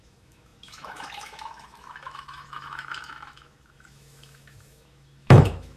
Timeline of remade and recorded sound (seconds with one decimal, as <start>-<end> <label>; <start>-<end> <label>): 0.0-5.8 remade